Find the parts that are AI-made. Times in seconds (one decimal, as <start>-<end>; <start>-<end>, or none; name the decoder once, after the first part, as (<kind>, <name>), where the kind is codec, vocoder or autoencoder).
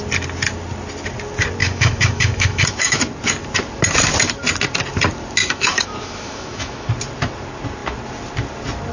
1.6-3.0 (autoencoder, DAC-VAE); 5.4-6.9